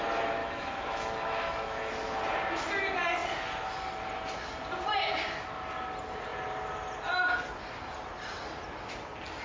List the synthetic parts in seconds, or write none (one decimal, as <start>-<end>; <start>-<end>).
0.4-1.9